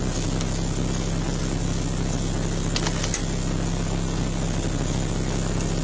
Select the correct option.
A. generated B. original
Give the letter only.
B